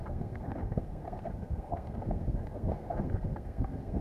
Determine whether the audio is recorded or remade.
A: remade